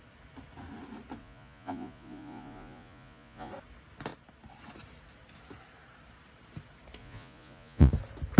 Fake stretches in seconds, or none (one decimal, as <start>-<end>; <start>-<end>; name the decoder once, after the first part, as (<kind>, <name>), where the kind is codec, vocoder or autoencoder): 1.2-3.5 (vocoder, Vocos); 7.0-7.9